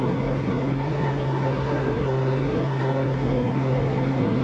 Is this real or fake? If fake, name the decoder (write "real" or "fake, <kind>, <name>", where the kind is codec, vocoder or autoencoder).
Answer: fake, codec, SNAC